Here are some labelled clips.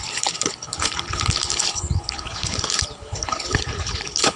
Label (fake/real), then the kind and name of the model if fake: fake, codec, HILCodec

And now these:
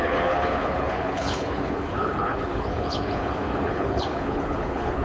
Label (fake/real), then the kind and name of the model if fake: fake, codec, HILCodec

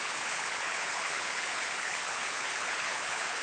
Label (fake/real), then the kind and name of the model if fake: fake, codec, HILCodec